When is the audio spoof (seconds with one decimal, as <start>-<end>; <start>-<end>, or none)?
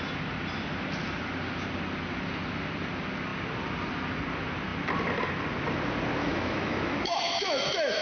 6.2-8.0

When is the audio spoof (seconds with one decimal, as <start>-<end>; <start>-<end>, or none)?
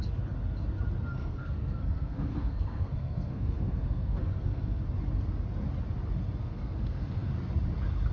1.2-4.8; 6.4-7.3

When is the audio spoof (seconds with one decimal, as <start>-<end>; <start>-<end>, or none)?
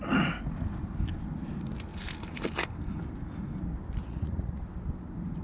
4.0-4.6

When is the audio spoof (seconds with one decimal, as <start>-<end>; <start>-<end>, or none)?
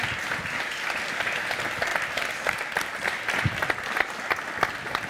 none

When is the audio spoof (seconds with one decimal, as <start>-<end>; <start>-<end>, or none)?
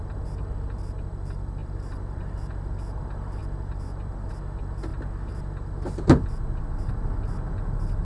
1.6-2.5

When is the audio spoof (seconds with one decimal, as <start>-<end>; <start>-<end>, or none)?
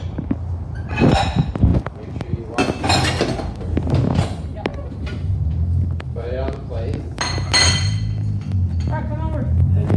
4.7-5.3